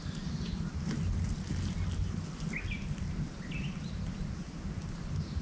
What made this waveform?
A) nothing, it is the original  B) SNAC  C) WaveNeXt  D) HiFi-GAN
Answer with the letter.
A